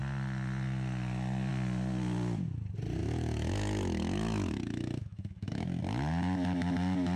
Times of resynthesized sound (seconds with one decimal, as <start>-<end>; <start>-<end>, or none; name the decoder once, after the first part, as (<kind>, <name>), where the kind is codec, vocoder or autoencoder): 3.0-5.8 (autoencoder, DAC-VAE)